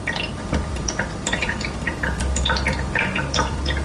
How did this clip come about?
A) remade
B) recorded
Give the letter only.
A